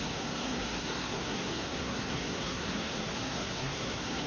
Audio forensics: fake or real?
fake